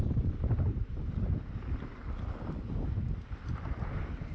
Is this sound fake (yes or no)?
no